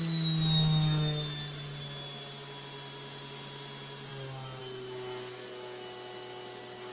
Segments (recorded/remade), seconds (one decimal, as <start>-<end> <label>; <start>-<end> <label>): 0.0-6.9 recorded